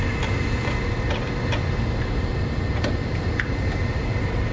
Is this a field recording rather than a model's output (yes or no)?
yes